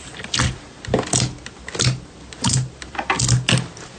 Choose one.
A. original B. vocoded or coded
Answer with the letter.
A